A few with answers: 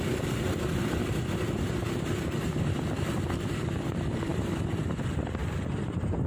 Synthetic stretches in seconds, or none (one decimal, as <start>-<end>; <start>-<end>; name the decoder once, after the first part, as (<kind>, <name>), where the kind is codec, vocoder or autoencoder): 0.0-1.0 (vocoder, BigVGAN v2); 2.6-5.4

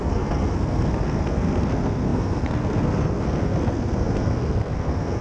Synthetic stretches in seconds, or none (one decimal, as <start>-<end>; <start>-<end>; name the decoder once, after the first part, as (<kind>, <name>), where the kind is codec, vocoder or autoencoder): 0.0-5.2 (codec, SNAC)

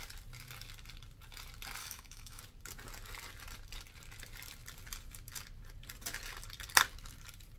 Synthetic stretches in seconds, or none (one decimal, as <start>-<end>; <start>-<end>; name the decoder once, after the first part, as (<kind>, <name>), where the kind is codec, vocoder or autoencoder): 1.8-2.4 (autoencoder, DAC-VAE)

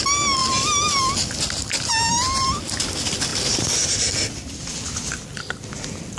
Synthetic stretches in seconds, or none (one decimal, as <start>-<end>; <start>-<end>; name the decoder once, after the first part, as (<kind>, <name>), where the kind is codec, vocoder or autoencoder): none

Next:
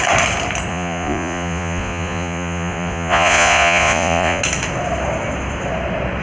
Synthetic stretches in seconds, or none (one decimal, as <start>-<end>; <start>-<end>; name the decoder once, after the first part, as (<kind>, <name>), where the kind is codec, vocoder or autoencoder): 0.7-4.4 (vocoder, Vocos)